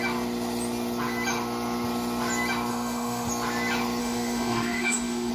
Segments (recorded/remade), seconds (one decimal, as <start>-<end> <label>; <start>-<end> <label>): 0.0-2.7 recorded; 2.7-3.3 remade; 3.3-4.0 recorded; 4.0-5.3 remade